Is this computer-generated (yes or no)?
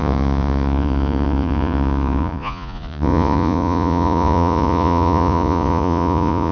yes